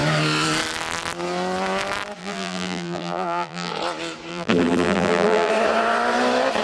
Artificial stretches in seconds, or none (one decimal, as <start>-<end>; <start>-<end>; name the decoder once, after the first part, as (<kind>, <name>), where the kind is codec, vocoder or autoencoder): 2.2-3.7 (vocoder, BigVGAN v2); 4.3-5.5